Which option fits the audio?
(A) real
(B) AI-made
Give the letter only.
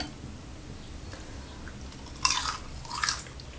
A